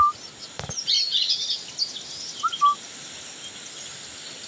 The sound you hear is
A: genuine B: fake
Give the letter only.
A